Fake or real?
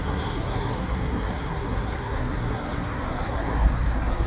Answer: fake